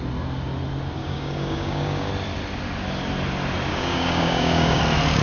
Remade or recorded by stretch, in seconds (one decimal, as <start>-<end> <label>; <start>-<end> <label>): 0.0-1.0 recorded; 1.0-2.1 remade; 2.1-3.7 recorded; 3.7-4.8 remade; 4.8-5.2 recorded